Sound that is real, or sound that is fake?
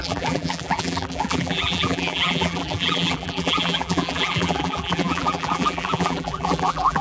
fake